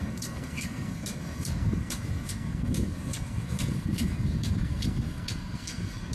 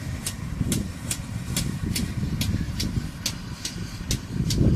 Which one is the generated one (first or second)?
first